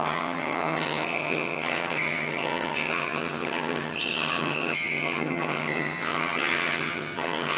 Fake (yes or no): yes